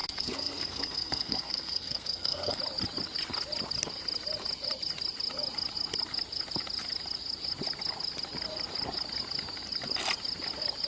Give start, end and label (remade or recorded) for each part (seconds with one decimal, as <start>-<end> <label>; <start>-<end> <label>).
0.0-2.6 remade; 2.6-10.9 recorded